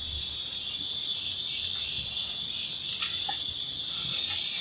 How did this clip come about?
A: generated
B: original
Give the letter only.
B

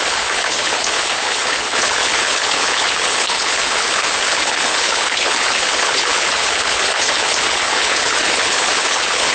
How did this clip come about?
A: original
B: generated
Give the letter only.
B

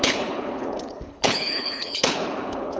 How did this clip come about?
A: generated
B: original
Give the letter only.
A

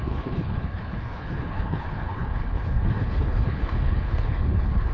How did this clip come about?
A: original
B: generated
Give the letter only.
B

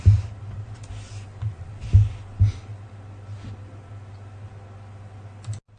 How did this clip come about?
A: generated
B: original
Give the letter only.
B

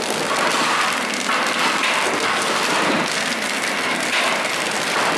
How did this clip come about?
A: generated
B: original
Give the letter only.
B